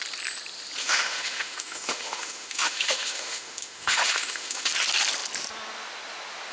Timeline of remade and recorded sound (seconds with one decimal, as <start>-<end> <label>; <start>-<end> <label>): 0.0-0.8 recorded; 0.8-4.7 remade; 4.7-6.5 recorded